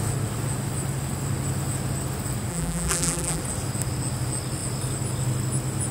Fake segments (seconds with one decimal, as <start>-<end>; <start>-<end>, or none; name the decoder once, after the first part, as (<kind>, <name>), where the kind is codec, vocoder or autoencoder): 2.5-3.4 (vocoder, BigVGAN v2)